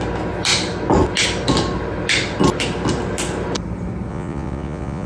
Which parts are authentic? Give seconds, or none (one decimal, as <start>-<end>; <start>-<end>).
0.0-4.1